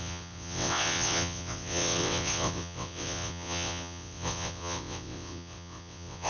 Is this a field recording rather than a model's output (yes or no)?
no